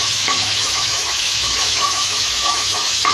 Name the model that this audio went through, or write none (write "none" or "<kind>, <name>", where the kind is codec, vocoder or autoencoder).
autoencoder, DAC-VAE